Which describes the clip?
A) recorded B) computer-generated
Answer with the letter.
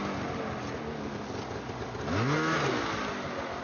A